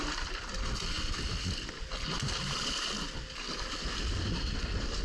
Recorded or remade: recorded